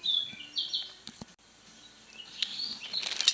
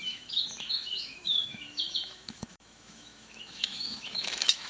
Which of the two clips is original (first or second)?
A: first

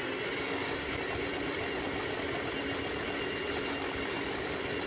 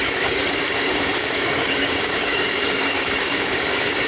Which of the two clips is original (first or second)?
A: first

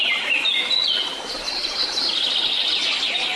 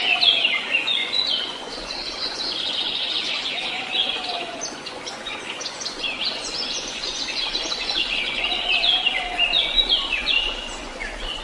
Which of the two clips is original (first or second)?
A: first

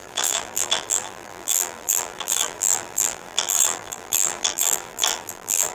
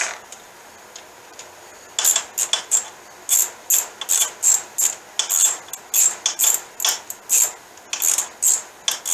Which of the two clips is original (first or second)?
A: second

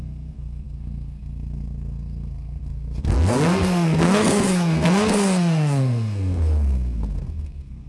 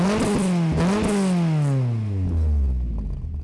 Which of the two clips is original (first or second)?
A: second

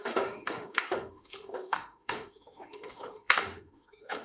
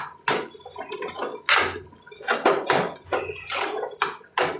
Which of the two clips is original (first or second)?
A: second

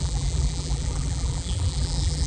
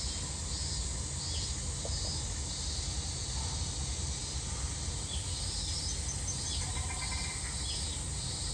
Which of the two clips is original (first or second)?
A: second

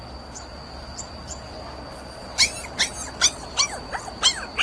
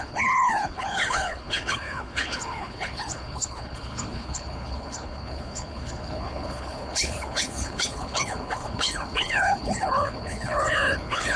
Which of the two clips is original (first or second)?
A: first